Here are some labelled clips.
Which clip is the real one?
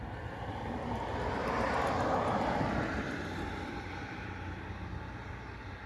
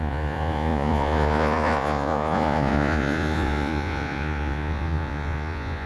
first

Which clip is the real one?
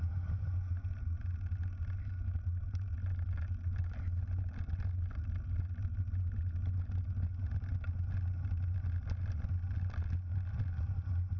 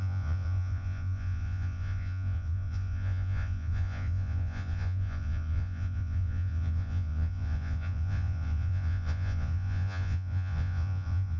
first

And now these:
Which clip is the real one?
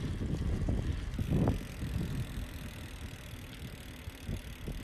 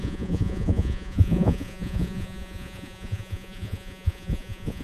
first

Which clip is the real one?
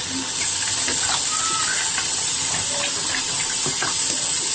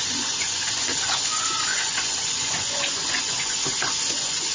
first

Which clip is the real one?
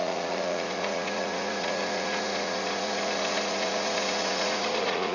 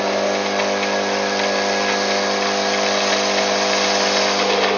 second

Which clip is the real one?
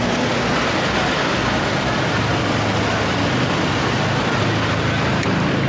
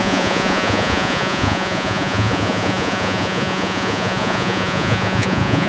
first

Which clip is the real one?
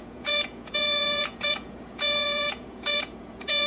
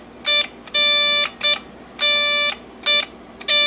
second